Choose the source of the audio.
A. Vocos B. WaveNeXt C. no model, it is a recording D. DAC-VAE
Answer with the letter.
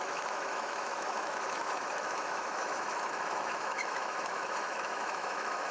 D